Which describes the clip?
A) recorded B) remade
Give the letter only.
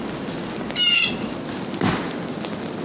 A